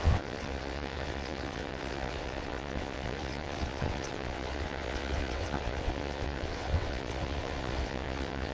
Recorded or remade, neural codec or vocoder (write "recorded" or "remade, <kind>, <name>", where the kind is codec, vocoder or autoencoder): remade, vocoder, WaveNeXt